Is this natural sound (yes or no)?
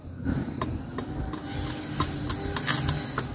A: yes